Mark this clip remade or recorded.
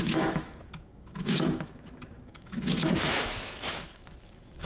remade